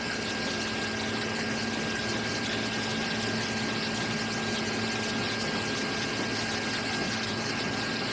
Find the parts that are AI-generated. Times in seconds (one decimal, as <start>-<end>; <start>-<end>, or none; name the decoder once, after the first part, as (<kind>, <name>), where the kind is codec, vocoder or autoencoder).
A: none